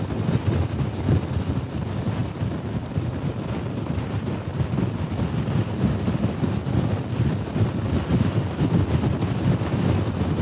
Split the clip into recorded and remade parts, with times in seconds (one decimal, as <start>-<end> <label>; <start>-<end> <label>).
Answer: 0.0-2.2 recorded; 2.2-2.9 remade; 2.9-4.5 recorded; 4.5-5.1 remade; 5.1-10.4 recorded